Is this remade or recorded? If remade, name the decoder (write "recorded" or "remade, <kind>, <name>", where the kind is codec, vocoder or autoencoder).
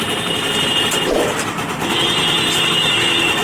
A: recorded